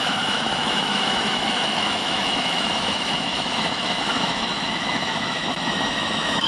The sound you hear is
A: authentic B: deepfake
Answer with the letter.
B